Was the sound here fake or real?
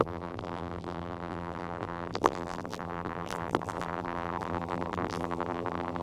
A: fake